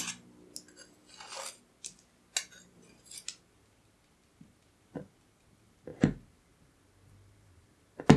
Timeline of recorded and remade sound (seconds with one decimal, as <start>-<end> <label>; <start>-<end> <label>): 0.0-8.2 recorded